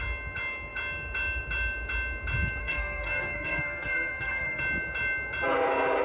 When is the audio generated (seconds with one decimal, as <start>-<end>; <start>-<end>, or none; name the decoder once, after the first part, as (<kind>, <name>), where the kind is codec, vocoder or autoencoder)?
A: 2.6-4.6 (codec, SNAC)